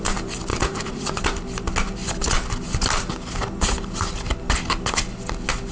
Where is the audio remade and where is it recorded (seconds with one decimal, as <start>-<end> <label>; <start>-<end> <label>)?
0.0-0.5 recorded; 0.5-1.2 remade; 1.2-5.7 recorded